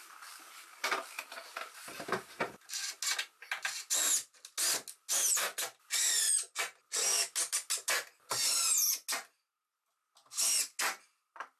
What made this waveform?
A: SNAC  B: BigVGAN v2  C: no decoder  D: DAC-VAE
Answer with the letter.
C